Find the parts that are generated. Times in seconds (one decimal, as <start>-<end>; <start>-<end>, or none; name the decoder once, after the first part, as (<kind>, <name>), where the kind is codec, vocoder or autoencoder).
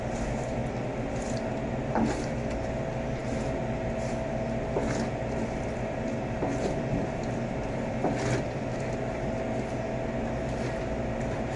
none